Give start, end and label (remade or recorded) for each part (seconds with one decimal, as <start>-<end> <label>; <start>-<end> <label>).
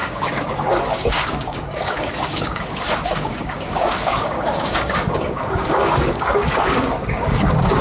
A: 0.0-7.8 remade